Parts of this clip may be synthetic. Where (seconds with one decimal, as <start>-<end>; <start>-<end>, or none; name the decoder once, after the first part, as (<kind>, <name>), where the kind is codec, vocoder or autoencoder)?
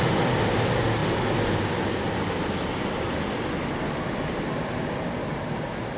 none